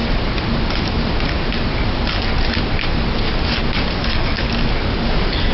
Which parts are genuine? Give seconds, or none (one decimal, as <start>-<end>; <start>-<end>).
0.0-4.0; 4.5-5.5